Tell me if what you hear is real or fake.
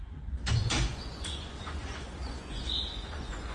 fake